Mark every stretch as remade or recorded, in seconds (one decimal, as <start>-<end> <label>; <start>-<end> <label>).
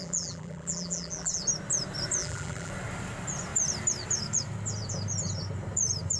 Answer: 0.0-1.4 remade; 1.4-2.2 recorded; 2.2-2.7 remade; 2.7-6.2 recorded